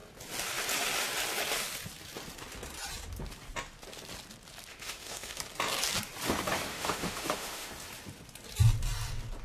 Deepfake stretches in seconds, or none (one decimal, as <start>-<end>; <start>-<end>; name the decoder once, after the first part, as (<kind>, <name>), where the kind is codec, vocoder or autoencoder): 4.7-5.4 (autoencoder, DAC-VAE); 6.7-7.7